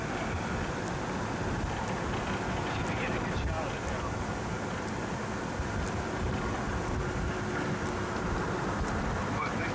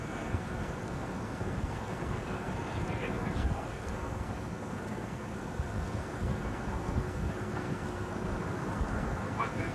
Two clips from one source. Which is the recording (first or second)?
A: first